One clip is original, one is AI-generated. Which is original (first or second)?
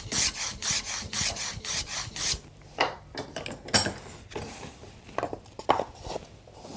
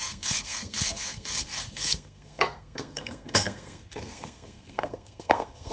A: first